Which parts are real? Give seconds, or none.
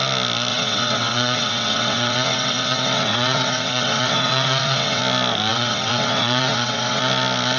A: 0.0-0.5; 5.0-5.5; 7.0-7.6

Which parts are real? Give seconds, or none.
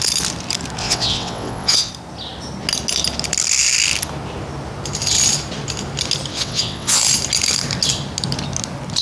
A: 0.0-0.8; 1.9-6.3; 7.0-9.0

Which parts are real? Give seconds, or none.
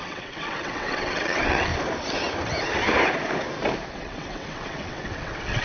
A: 1.7-3.9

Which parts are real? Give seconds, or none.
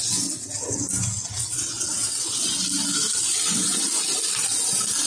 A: 0.0-1.4; 2.5-3.3; 3.8-5.1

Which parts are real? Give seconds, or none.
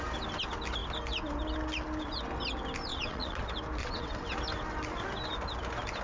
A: 0.0-2.9; 3.4-3.8; 4.3-6.0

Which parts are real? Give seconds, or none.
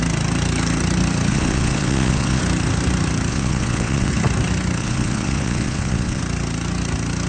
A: 0.0-1.3; 2.4-3.3; 4.1-4.8; 6.2-7.3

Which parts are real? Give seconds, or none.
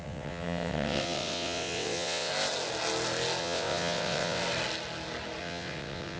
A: 2.3-3.4; 4.4-5.4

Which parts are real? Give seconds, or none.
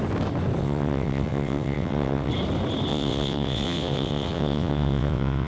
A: 0.0-0.6; 2.3-2.9